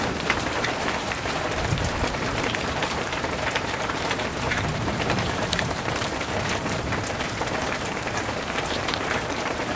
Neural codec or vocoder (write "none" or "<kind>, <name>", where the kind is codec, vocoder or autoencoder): vocoder, BigVGAN v2